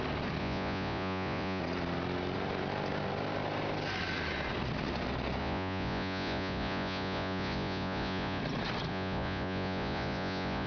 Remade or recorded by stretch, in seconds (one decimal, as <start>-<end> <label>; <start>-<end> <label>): 0.0-0.4 recorded; 0.4-1.6 remade; 1.6-5.4 recorded; 5.4-8.4 remade; 8.4-8.9 recorded; 8.9-10.7 remade